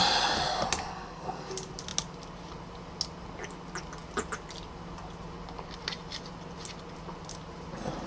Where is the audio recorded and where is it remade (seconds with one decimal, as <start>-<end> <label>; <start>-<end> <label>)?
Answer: 0.0-0.9 recorded; 0.9-1.5 remade; 1.5-8.1 recorded